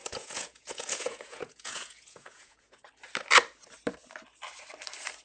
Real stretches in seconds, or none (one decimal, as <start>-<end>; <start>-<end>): 2.8-5.2